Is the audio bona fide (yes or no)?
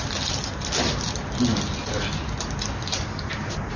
yes